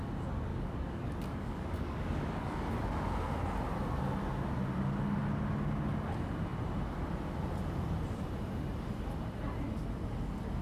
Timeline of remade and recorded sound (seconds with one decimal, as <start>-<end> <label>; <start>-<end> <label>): 0.0-0.5 recorded; 0.5-2.7 remade; 2.7-10.6 recorded